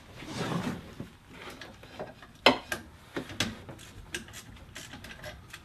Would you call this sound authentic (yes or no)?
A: yes